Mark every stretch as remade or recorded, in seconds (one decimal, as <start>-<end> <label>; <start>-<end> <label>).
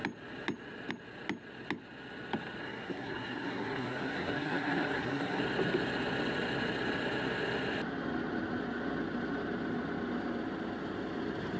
0.0-2.6 recorded; 2.6-5.4 remade; 5.4-11.6 recorded